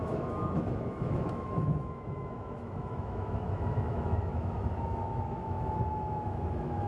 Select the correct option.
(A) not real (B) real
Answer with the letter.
A